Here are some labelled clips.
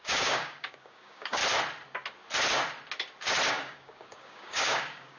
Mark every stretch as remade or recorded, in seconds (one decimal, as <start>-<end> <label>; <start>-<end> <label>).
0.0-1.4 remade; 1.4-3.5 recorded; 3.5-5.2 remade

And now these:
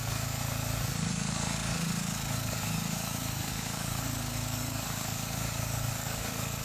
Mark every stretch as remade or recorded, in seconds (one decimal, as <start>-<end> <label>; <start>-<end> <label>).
0.0-0.4 remade; 0.4-1.1 recorded; 1.1-6.6 remade

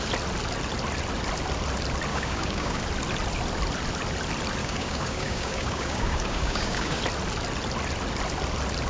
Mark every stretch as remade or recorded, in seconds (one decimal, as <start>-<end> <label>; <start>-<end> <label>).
0.0-2.1 recorded; 2.1-2.8 remade; 2.8-4.6 recorded; 4.6-7.0 remade; 7.0-8.9 recorded

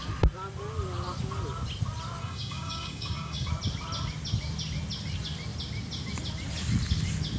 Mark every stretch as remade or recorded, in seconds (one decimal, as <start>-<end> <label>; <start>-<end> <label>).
0.0-2.2 recorded; 2.2-3.5 remade; 3.5-7.4 recorded

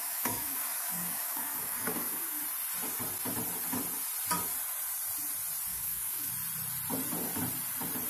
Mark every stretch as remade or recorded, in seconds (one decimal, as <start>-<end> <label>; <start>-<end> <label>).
0.0-2.4 remade; 2.4-5.7 recorded; 5.7-6.3 remade; 6.3-8.1 recorded

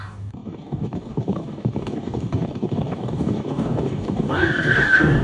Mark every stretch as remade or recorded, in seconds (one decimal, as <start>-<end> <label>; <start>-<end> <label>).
0.0-5.2 remade